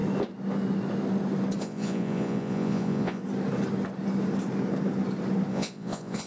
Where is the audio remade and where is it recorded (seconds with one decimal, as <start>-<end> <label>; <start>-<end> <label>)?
0.0-1.6 recorded; 1.6-3.2 remade; 3.2-5.5 recorded; 5.5-6.3 remade